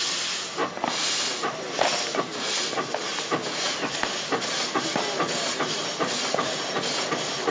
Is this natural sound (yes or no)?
yes